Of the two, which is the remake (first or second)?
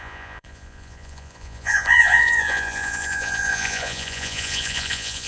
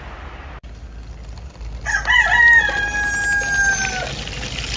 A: first